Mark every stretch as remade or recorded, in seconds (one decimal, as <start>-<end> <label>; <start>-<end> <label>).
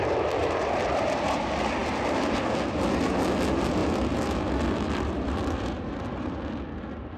0.0-0.4 recorded; 0.4-1.3 remade; 1.3-3.8 recorded; 3.8-5.8 remade; 5.8-7.2 recorded